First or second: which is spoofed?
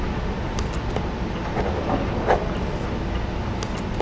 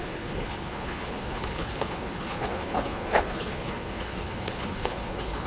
second